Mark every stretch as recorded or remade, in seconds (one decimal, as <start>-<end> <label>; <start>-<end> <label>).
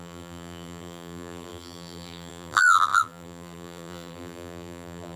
0.0-5.2 remade